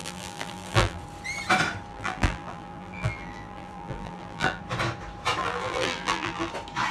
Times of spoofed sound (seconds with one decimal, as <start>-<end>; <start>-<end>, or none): 0.0-1.0; 1.9-4.6; 5.4-6.5